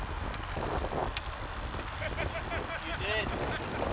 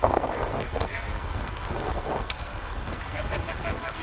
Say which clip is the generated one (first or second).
second